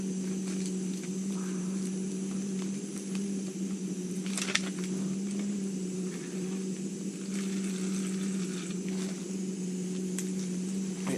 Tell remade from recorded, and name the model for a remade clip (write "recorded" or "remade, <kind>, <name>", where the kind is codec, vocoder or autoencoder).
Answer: recorded